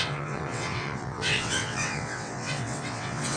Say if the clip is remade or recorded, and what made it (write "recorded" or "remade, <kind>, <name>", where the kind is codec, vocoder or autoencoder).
remade, vocoder, WaveNeXt